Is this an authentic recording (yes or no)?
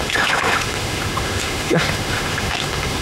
no